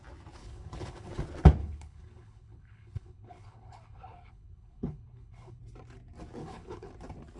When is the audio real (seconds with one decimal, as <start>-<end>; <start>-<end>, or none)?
0.0-0.4; 1.1-1.6; 5.6-6.4; 6.9-7.4